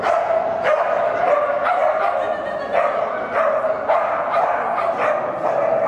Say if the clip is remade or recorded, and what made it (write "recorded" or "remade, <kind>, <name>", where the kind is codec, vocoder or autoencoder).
recorded